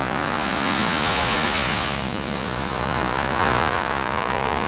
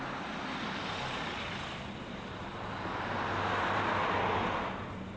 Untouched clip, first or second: second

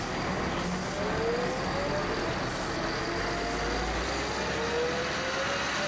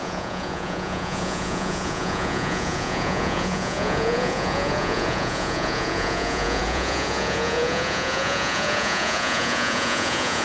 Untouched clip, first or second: first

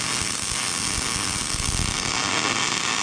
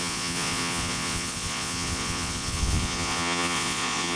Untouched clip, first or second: first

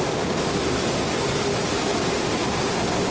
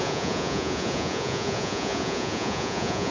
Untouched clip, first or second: first